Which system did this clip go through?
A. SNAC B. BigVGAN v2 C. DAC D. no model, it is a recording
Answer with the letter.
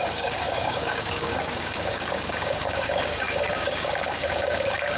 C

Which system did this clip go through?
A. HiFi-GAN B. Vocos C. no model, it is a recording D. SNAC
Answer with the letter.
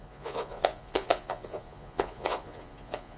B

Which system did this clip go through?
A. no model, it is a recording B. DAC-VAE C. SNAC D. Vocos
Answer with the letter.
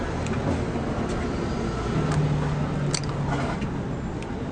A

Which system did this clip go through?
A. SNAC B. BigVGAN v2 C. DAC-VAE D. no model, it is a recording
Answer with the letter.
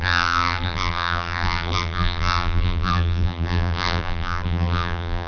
B